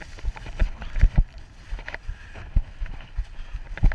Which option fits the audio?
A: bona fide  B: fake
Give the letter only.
A